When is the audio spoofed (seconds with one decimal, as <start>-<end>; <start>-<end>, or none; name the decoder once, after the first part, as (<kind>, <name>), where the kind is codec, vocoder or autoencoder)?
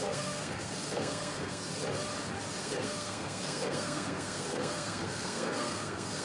0.0-1.7 (codec, SNAC); 2.6-6.2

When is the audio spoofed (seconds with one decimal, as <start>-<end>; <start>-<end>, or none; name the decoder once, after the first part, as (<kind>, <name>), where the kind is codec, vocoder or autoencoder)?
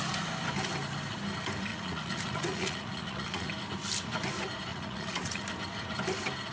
1.7-3.5 (vocoder, Vocos); 4.7-5.4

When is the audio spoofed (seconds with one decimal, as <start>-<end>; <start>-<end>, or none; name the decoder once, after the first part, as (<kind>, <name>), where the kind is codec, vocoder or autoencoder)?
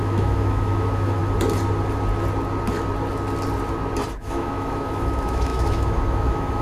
0.0-1.2 (autoencoder, DAC-VAE); 4.2-6.6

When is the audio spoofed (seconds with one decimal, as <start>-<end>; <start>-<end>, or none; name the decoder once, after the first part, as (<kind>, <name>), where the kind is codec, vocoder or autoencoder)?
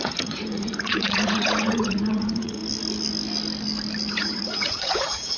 0.0-2.6 (vocoder, Vocos); 4.1-5.4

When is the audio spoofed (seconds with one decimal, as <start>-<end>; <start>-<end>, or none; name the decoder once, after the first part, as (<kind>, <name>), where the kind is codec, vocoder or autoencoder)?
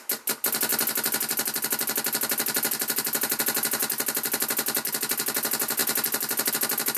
none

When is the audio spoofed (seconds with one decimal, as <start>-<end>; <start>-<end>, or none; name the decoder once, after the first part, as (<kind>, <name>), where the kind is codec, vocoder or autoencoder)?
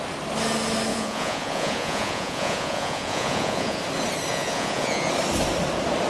0.9-3.8 (vocoder, Vocos); 4.3-5.1